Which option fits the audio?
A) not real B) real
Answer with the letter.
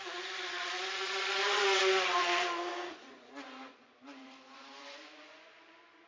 A